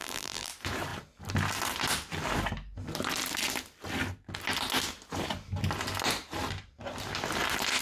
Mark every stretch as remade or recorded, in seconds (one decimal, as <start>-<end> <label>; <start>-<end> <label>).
0.0-0.5 remade; 0.5-7.8 recorded

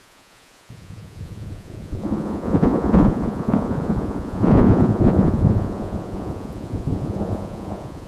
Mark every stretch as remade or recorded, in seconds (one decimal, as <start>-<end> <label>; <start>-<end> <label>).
0.0-8.1 remade

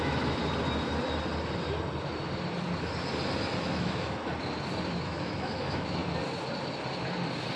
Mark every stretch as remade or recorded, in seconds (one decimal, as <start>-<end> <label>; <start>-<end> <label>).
0.0-0.4 remade; 0.4-3.6 recorded; 3.6-4.2 remade; 4.2-4.9 recorded; 4.9-6.0 remade; 6.0-7.6 recorded

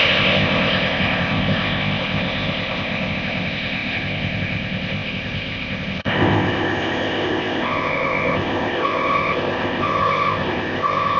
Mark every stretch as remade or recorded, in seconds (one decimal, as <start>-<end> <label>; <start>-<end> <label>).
0.0-11.2 remade

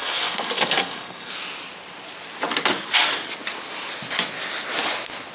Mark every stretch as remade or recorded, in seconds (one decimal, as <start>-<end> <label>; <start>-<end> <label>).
0.0-1.3 remade; 1.3-5.3 recorded

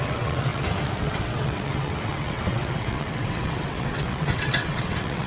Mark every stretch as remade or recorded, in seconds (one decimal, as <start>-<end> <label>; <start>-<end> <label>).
0.0-5.3 remade

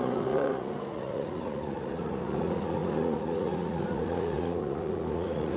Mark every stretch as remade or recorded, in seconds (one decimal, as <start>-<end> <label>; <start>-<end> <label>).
0.0-5.6 remade